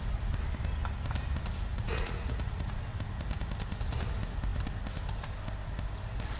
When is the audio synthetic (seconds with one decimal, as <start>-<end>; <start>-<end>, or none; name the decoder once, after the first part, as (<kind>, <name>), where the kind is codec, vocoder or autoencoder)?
1.7-2.7 (vocoder, Vocos)